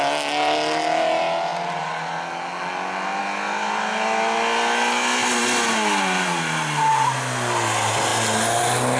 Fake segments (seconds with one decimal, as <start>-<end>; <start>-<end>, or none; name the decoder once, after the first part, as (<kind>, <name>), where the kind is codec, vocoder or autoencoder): none